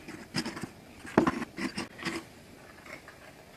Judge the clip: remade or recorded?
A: recorded